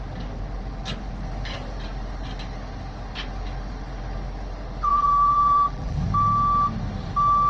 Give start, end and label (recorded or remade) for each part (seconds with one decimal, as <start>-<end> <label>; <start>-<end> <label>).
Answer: 0.0-4.9 recorded; 4.9-6.0 remade; 6.0-7.5 recorded